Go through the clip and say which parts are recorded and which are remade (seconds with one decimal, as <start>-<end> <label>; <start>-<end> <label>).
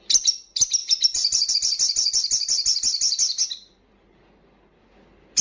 0.0-5.4 recorded